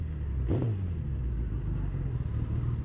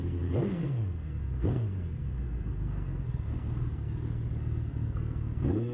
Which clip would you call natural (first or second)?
first